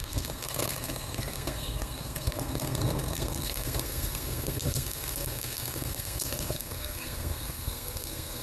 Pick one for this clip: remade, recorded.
remade